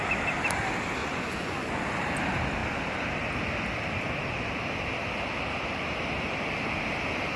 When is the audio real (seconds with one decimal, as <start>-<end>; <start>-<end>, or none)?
0.0-1.0; 1.8-7.4

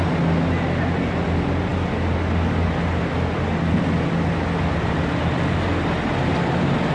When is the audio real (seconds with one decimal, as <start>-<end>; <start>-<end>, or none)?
0.0-6.9

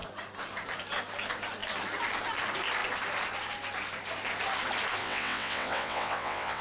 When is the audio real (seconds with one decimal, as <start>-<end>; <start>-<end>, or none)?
0.0-5.0

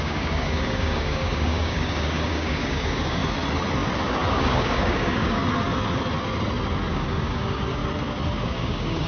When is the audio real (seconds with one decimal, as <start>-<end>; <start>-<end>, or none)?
3.2-4.3; 5.4-6.9; 7.8-8.4

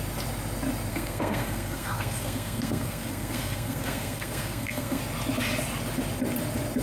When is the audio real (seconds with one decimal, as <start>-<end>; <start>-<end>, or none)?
0.0-0.9; 5.0-6.8

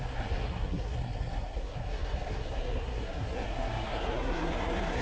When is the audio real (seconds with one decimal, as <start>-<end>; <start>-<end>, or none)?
none